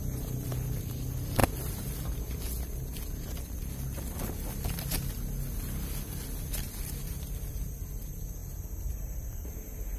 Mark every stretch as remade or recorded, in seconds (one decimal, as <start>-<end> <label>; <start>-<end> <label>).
0.0-10.0 recorded